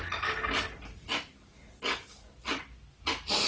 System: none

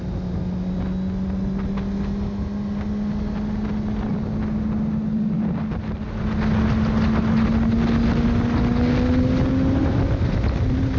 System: none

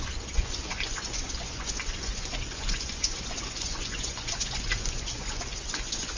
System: vocoder, Vocos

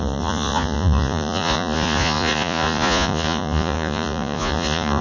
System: vocoder, Vocos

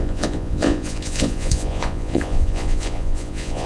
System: vocoder, Vocos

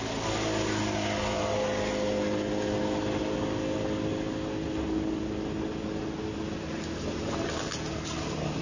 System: none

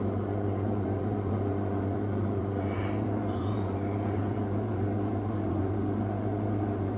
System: vocoder, Vocos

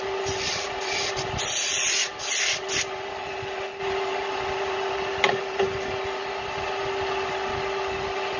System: none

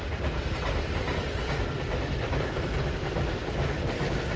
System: none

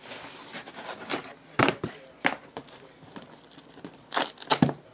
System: none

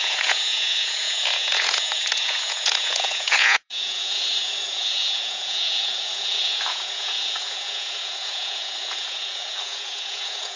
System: vocoder, Vocos